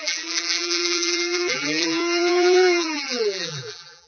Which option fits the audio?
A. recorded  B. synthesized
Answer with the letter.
B